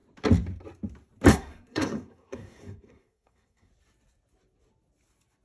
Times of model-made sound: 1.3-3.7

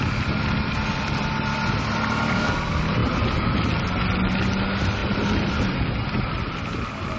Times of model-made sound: 5.0-5.5

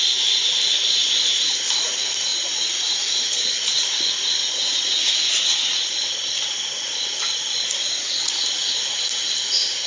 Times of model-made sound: 2.3-2.8; 4.4-5.9; 7.8-8.4

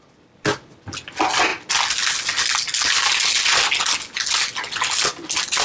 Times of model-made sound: none